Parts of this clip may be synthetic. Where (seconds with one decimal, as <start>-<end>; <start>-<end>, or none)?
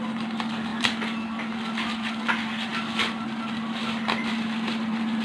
0.0-5.2